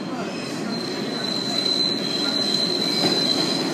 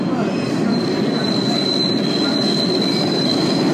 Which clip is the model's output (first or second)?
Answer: second